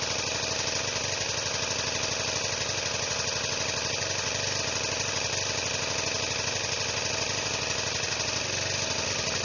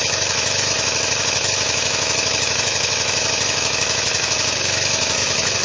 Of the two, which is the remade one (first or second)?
second